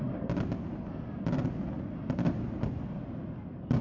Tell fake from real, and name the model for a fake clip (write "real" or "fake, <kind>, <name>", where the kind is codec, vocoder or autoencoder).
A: real